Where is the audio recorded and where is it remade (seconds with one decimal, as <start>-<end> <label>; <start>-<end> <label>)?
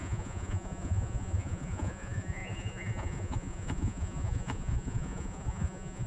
0.0-6.1 remade